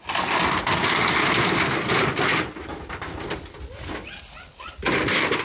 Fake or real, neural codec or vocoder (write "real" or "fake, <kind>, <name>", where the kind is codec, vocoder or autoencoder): real